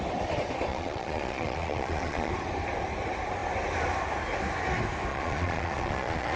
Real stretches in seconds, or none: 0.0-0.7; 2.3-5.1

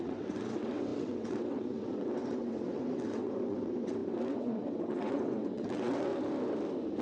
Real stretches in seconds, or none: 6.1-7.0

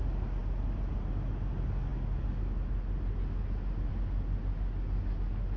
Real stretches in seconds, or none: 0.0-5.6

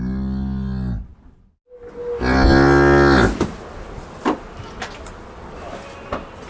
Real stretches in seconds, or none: 0.0-6.5